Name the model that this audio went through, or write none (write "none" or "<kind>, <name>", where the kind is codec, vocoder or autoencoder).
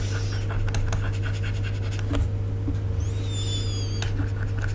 none